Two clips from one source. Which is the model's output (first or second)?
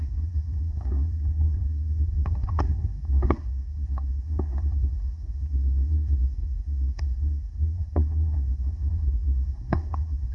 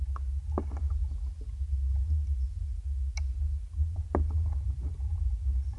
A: first